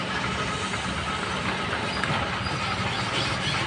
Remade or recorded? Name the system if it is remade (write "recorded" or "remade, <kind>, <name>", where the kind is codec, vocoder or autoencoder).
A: recorded